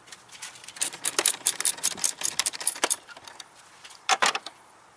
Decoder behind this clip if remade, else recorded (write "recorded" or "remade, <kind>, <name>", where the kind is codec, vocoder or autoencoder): remade, vocoder, BigVGAN v2